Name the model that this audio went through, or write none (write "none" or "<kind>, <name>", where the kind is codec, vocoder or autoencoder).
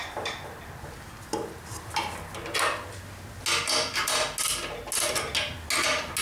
none